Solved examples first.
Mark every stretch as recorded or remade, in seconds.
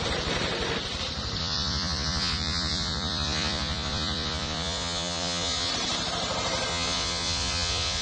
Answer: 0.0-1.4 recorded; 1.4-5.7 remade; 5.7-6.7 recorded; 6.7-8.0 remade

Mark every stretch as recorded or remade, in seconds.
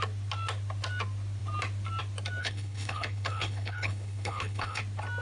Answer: 0.0-2.4 recorded; 2.4-4.8 remade; 4.8-5.2 recorded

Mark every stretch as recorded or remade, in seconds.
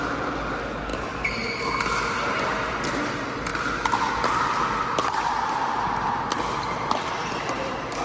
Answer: 0.0-8.0 recorded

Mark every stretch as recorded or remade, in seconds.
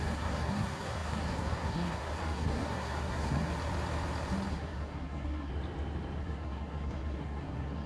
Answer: 0.0-3.5 remade; 3.5-4.5 recorded; 4.5-5.5 remade; 5.5-6.2 recorded; 6.2-7.9 remade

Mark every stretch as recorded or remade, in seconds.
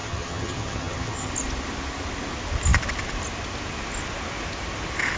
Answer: 0.0-1.3 remade; 1.3-5.2 recorded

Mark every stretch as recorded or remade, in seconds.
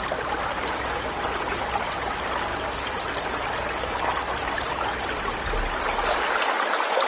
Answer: 0.0-7.1 recorded